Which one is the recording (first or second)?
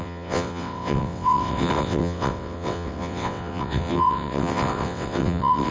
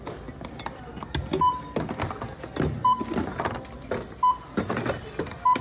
second